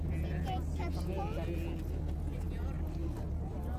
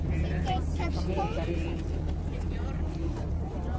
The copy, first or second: second